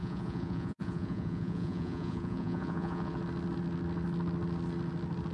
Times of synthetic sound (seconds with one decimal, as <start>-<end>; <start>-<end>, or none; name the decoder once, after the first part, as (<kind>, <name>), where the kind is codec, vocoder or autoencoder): 0.0-3.2 (vocoder, Vocos)